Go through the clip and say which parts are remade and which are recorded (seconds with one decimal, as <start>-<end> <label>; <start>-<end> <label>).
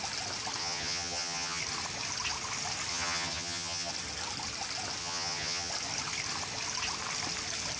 0.0-0.6 recorded; 0.6-1.6 remade; 1.6-2.9 recorded; 2.9-3.9 remade; 3.9-5.0 recorded; 5.0-5.7 remade; 5.7-7.8 recorded